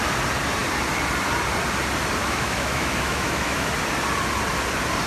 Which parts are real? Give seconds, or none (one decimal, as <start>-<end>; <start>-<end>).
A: 0.0-2.2; 3.7-5.1